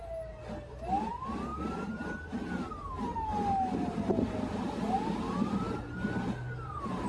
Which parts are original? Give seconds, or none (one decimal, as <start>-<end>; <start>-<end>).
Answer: 0.0-7.1